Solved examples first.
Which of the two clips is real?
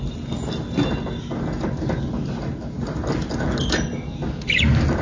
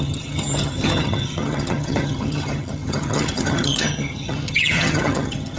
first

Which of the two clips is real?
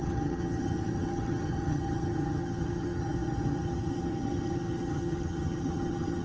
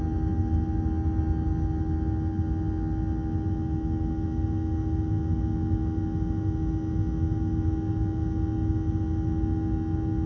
second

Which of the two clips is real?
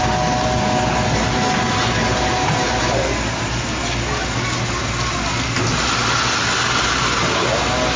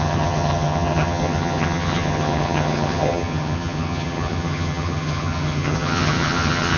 first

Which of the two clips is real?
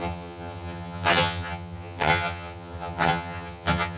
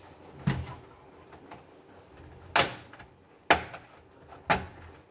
second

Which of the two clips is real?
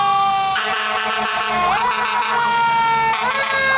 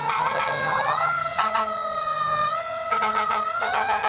first